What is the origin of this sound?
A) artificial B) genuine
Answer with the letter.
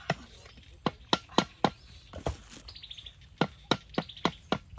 B